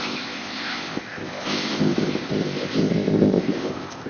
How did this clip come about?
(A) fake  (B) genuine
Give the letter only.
A